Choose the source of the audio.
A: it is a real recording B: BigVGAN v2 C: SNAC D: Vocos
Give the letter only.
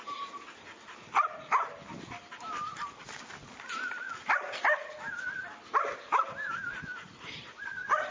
A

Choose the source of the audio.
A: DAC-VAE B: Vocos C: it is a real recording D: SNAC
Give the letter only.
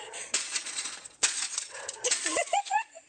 B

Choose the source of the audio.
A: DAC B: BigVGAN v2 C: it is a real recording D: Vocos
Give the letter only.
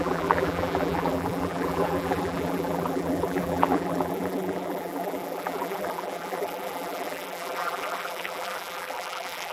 B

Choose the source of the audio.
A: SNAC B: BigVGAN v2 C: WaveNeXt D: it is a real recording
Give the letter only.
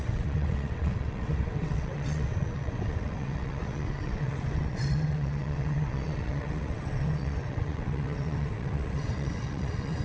C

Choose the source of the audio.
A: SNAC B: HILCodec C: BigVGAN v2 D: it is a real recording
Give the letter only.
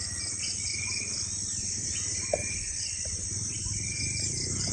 D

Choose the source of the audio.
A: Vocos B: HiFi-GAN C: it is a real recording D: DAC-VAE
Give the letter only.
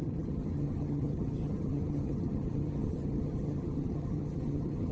B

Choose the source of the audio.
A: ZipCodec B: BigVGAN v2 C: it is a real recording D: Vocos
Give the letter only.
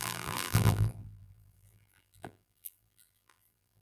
B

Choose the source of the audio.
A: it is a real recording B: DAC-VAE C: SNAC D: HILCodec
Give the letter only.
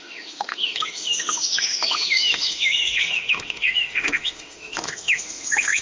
B